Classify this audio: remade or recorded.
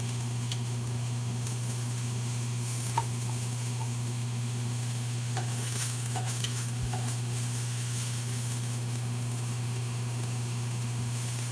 remade